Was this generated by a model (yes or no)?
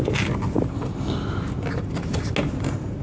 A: no